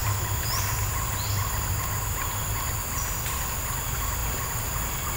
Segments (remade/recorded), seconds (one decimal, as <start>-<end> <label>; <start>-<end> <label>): 0.0-0.6 remade; 0.6-5.2 recorded